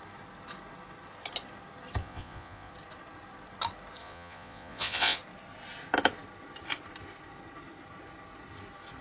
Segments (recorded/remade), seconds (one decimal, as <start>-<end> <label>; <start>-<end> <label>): 0.0-2.0 recorded; 2.0-2.7 remade; 2.7-4.0 recorded; 4.0-5.2 remade; 5.2-9.0 recorded